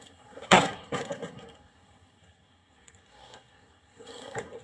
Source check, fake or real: fake